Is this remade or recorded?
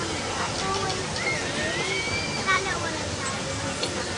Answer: recorded